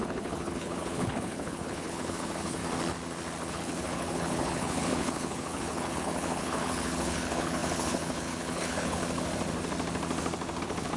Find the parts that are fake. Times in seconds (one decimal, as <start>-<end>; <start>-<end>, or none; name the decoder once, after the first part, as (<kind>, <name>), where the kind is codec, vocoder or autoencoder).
0.0-2.6 (codec, HILCodec); 3.5-9.0; 10.6-11.0